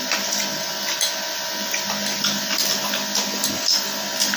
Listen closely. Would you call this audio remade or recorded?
recorded